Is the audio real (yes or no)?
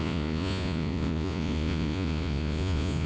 no